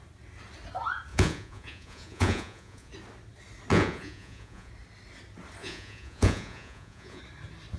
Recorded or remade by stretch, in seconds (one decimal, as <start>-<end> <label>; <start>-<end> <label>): 0.0-1.1 recorded; 1.1-2.9 remade; 2.9-3.7 recorded; 3.7-4.7 remade; 4.7-5.6 recorded; 5.6-7.2 remade; 7.2-7.8 recorded